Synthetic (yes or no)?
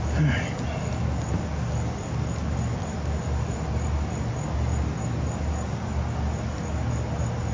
no